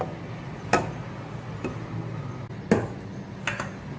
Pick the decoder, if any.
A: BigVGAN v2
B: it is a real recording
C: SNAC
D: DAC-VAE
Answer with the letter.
B